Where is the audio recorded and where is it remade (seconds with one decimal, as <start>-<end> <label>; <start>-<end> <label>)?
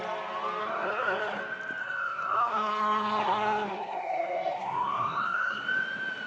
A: 0.0-0.6 recorded; 0.6-1.4 remade; 1.4-1.8 recorded; 1.8-5.6 remade; 5.6-6.3 recorded